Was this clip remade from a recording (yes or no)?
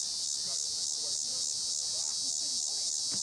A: no